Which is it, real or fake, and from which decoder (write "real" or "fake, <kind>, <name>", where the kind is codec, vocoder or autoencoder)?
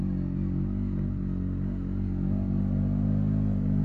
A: real